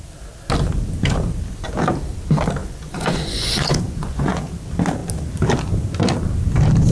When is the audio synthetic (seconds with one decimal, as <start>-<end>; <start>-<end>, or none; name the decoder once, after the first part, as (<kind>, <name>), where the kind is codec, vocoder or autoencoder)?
2.6-4.5 (vocoder, Vocos)